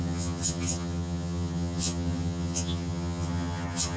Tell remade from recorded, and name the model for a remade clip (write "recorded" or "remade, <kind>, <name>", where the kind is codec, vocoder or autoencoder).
remade, vocoder, HiFi-GAN